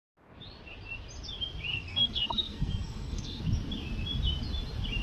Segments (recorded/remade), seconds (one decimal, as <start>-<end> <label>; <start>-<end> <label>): 0.0-1.7 recorded; 1.7-3.4 remade; 3.4-5.0 recorded